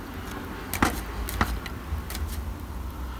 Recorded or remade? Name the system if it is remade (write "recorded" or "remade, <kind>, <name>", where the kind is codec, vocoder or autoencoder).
recorded